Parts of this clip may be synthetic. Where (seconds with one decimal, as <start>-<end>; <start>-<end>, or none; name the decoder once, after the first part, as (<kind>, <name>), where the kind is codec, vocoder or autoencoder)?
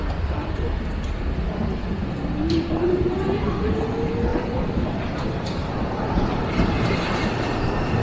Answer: 2.0-3.4 (vocoder, BigVGAN v2); 4.3-8.0